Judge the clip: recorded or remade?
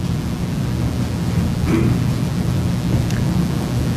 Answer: recorded